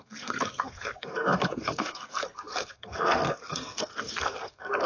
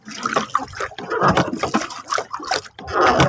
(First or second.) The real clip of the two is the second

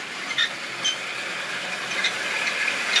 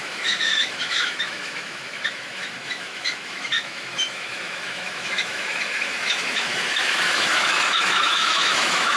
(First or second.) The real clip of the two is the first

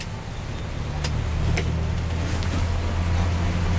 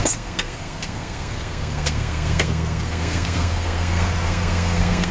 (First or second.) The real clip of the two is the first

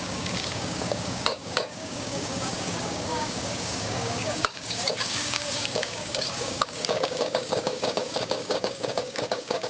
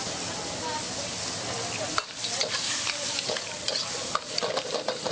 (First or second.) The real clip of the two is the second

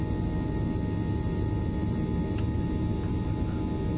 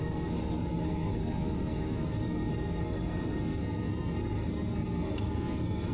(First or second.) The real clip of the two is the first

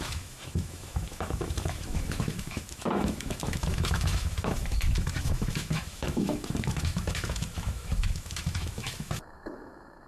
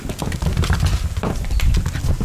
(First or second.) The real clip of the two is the second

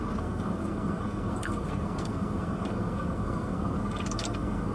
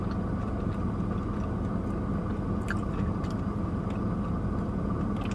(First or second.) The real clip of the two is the second